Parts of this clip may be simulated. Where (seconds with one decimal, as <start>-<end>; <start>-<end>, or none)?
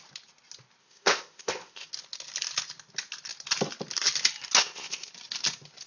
0.8-1.9; 4.6-5.1